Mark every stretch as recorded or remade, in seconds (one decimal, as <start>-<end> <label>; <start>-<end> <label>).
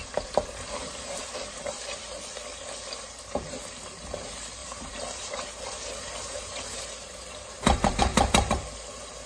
0.0-1.7 remade; 1.7-4.6 recorded; 4.6-8.0 remade; 8.0-9.3 recorded